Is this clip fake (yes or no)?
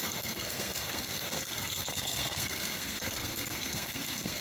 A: yes